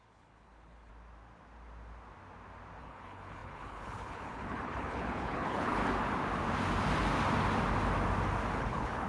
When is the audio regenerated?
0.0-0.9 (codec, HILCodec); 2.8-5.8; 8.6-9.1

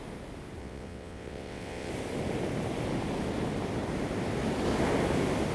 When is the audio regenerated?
0.6-1.9 (vocoder, WaveNeXt)